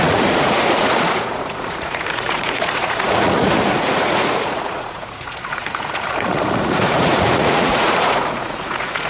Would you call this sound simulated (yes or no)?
yes